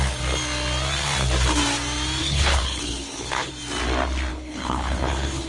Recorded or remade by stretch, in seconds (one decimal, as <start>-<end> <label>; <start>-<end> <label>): 0.0-2.2 recorded; 2.2-3.5 remade; 3.5-4.3 recorded; 4.3-5.5 remade